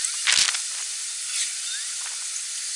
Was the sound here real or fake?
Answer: real